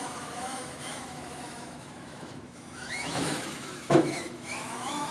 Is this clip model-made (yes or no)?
yes